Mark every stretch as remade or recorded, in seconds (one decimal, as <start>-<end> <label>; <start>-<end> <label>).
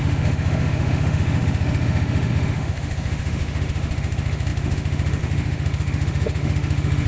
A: 0.0-7.1 remade